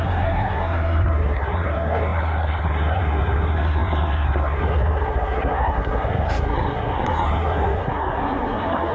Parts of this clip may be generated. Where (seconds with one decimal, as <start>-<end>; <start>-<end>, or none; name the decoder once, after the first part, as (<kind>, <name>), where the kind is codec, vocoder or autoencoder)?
0.0-8.9 (codec, SNAC)